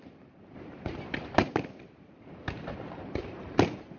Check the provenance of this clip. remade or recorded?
remade